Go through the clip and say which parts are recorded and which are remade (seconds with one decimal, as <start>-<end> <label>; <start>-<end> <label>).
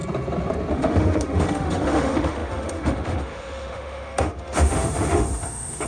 0.0-0.7 recorded; 0.7-5.9 remade